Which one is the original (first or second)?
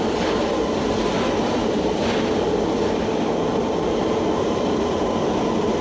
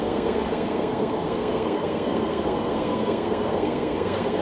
first